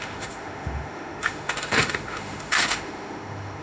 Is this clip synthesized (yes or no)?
yes